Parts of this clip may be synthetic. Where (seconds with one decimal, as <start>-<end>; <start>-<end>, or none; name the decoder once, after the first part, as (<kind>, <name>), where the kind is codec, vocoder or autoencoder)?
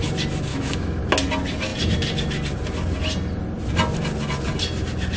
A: 0.5-1.0 (autoencoder, DAC-VAE)